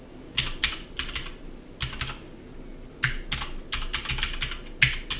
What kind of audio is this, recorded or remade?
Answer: recorded